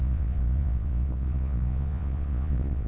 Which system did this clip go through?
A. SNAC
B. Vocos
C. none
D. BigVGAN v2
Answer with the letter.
B